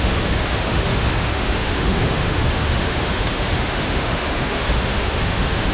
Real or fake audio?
fake